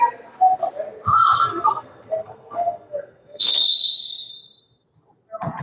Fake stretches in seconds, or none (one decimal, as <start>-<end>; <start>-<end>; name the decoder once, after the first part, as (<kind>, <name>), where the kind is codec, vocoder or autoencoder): 1.5-4.3 (codec, SNAC)